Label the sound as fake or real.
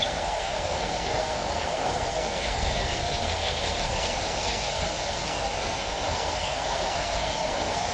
fake